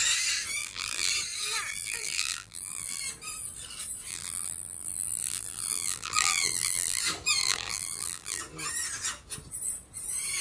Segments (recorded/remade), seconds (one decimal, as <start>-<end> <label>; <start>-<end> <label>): 0.0-0.6 recorded; 0.6-1.1 remade; 1.1-1.7 recorded; 1.7-3.0 remade; 3.0-4.1 recorded; 4.1-7.0 remade; 7.0-7.4 recorded; 7.4-8.4 remade; 8.4-10.4 recorded